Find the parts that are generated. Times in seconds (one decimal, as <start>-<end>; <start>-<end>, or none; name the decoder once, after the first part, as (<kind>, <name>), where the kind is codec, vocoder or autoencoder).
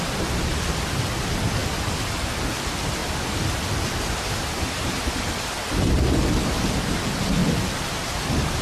3.0-5.1 (vocoder, BigVGAN v2)